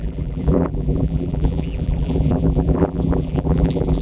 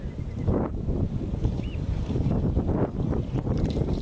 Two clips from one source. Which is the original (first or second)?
second